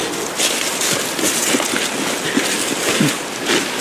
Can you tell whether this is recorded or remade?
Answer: recorded